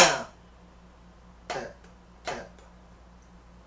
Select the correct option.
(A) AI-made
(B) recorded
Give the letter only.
B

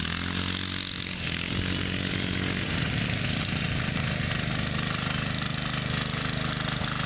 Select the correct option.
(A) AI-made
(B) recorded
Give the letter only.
B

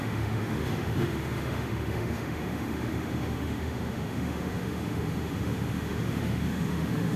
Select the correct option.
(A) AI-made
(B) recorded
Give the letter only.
A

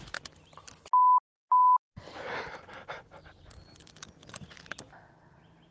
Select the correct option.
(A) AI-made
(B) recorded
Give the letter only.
B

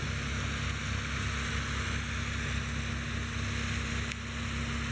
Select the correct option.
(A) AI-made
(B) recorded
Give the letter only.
B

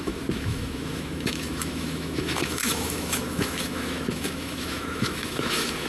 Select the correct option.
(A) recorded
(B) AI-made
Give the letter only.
B